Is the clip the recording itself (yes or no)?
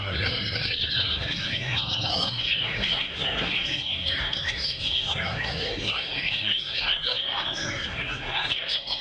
no